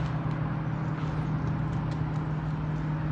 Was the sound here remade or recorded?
recorded